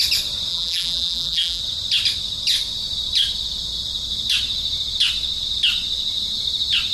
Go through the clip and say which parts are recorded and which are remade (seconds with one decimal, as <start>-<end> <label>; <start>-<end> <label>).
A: 0.0-0.5 recorded; 0.5-1.6 remade; 1.6-6.9 recorded